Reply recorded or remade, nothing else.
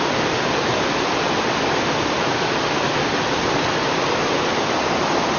recorded